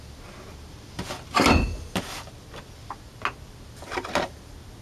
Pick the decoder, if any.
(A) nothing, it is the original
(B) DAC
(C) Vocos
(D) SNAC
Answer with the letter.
A